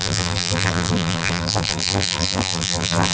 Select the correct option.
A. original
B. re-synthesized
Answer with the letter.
B